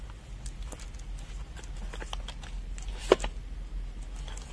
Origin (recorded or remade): recorded